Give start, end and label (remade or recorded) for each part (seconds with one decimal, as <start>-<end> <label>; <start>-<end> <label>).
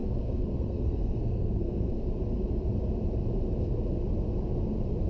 0.0-1.9 remade; 1.9-5.1 recorded